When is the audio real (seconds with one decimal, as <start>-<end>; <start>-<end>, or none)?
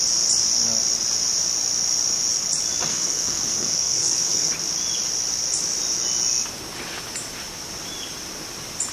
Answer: 0.0-2.9; 4.5-8.9